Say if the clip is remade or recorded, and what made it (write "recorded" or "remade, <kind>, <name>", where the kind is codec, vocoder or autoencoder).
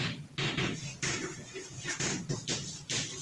remade, vocoder, BigVGAN v2